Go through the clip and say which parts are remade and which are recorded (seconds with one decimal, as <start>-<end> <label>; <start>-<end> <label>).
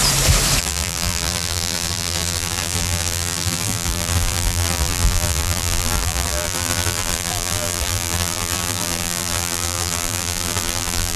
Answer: 0.0-0.6 recorded; 0.6-11.2 remade